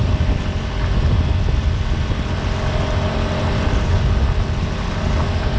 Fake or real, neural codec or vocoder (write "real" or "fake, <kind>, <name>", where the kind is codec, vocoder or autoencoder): real